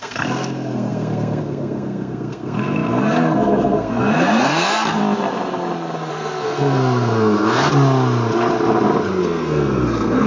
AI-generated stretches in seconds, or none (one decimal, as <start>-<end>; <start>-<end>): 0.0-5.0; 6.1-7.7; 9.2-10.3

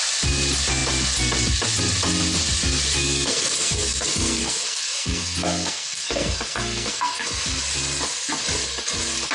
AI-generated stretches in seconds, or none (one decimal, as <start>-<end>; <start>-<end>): 3.0-7.6

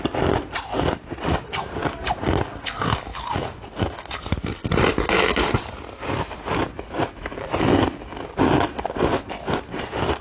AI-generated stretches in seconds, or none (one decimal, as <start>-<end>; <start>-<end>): 3.1-3.7; 8.1-9.2

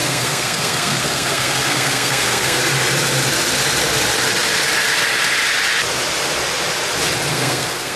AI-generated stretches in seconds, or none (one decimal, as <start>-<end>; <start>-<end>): 0.0-2.6; 7.3-8.0

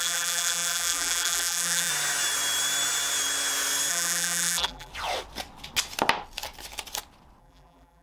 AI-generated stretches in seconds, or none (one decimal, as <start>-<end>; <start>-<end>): 0.0-1.9; 3.9-4.9; 7.4-8.0

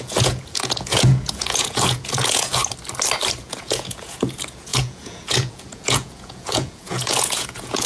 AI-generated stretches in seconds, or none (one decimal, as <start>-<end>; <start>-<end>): 0.0-2.6; 3.4-7.9

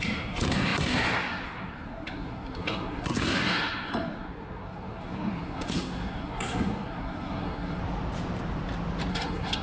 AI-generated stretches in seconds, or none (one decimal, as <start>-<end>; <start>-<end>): 0.0-7.8; 9.1-9.6

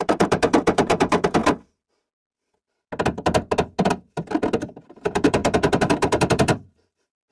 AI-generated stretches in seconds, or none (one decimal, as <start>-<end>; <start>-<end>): 0.0-1.4; 4.8-7.3